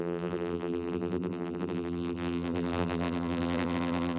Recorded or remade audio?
remade